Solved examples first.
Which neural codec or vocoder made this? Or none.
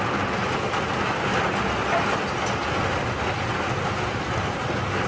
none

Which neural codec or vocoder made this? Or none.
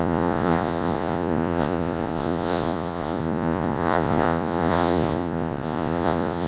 vocoder, Vocos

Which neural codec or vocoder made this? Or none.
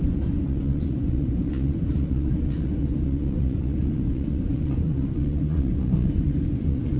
vocoder, Vocos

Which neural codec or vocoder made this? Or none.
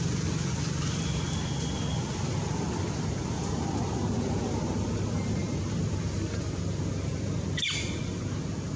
none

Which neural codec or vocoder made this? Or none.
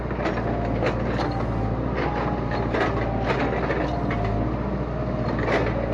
none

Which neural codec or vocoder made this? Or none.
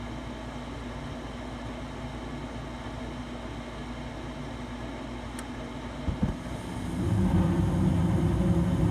none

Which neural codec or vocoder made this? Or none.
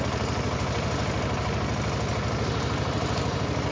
none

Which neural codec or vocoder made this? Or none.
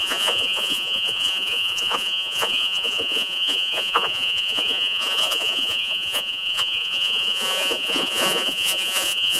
vocoder, Vocos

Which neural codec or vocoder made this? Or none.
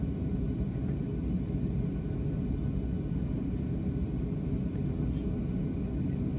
none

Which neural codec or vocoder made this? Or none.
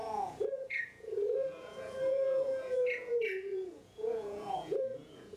vocoder, Vocos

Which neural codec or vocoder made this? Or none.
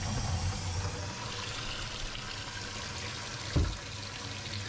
none